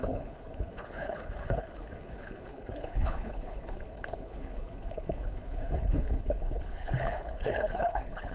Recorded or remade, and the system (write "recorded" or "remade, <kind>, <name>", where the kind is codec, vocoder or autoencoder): remade, codec, HILCodec